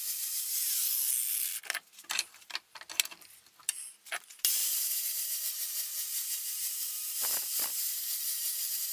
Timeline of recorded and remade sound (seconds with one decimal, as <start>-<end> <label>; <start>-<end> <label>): 0.0-8.9 recorded